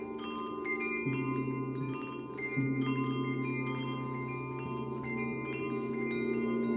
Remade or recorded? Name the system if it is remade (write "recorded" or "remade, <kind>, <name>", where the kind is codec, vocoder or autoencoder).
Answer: recorded